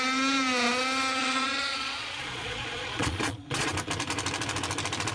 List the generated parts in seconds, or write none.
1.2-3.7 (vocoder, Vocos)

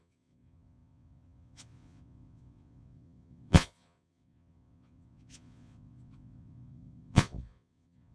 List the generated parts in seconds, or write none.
0.0-8.1 (vocoder, Vocos)

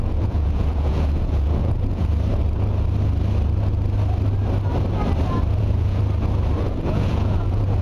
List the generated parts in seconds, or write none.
0.0-2.1 (vocoder, Vocos); 5.6-6.0; 6.6-7.8

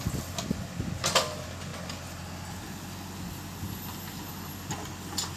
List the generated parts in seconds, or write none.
none

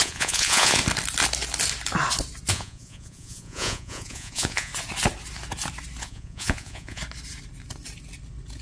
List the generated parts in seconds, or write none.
0.0-0.8 (vocoder, Vocos); 2.5-4.7; 6.0-7.0